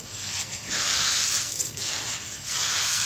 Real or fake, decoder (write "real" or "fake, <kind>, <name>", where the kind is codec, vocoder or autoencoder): fake, codec, SNAC